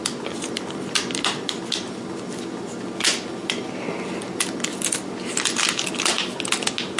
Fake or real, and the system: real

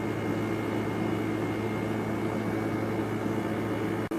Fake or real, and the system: real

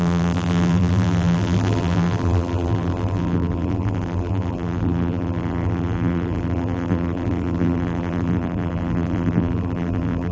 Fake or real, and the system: fake, vocoder, BigVGAN v2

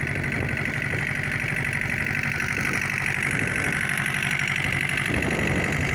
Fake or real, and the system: real